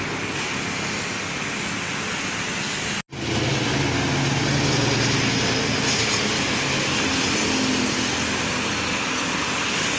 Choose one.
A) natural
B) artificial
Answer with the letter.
A